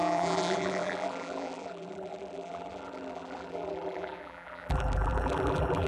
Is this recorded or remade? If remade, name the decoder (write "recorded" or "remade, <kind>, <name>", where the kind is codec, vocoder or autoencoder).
remade, vocoder, BigVGAN v2